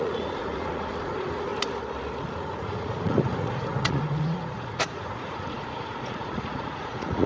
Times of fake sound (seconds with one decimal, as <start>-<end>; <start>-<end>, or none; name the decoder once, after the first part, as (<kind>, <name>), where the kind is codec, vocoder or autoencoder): 0.0-1.5 (vocoder, Vocos); 2.3-7.3